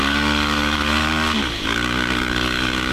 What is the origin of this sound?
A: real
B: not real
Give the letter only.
B